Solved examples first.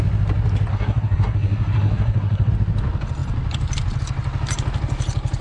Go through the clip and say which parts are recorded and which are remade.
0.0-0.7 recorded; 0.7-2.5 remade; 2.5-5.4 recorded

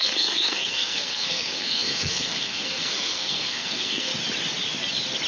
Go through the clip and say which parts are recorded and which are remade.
0.0-4.1 remade; 4.1-5.3 recorded

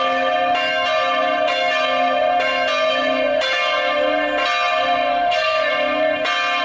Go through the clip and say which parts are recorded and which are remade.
0.0-5.1 recorded; 5.1-5.7 remade; 5.7-6.6 recorded

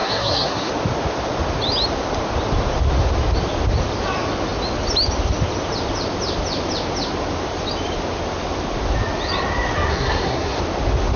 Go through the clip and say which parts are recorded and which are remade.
0.0-0.7 remade; 0.7-9.9 recorded; 9.9-10.6 remade; 10.6-11.2 recorded

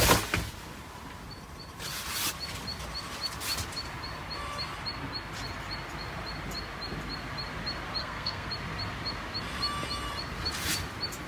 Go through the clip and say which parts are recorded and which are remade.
0.0-8.0 recorded; 8.0-8.5 remade; 8.5-11.3 recorded

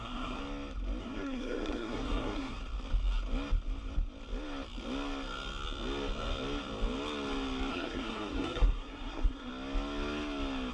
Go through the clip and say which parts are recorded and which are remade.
0.0-0.4 remade; 0.4-1.0 recorded; 1.0-2.6 remade; 2.6-7.7 recorded; 7.7-9.5 remade; 9.5-10.7 recorded

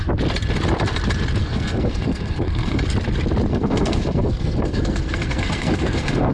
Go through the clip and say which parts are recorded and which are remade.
0.0-1.4 recorded; 1.4-2.8 remade; 2.8-3.5 recorded; 3.5-6.3 remade